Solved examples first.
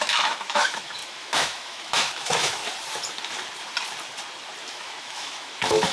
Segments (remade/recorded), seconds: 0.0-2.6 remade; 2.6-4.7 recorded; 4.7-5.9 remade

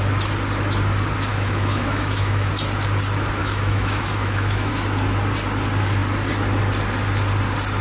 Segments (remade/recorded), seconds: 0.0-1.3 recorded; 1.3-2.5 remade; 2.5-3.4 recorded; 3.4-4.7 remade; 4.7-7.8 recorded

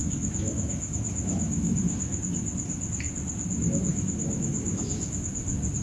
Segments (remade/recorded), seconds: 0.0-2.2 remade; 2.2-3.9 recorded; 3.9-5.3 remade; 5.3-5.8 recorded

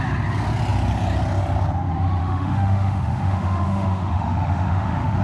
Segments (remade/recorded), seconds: 0.0-2.2 recorded; 2.2-5.2 remade

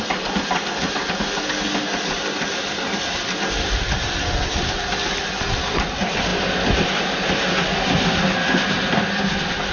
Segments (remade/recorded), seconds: 0.0-9.7 recorded

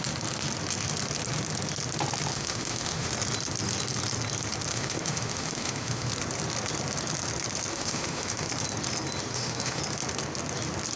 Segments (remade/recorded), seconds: 0.0-2.3 recorded; 2.3-3.1 remade; 3.1-4.7 recorded; 4.7-6.1 remade; 6.1-7.7 recorded; 7.7-8.5 remade; 8.5-9.3 recorded; 9.3-9.8 remade; 9.8-11.0 recorded